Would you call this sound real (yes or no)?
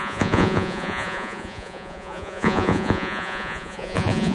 no